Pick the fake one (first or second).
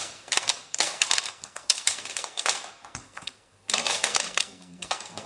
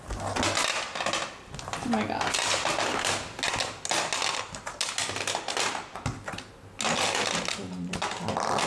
first